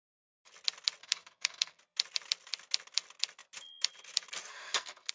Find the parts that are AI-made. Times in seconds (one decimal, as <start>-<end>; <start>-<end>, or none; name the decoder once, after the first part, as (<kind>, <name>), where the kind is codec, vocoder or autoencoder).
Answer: 1.0-1.8 (codec, SNAC); 4.5-5.1